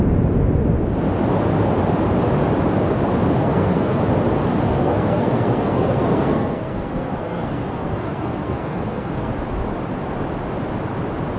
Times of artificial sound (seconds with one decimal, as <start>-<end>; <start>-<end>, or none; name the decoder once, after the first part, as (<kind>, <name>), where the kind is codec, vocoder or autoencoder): 3.4-4.0 (codec, SNAC); 4.7-9.3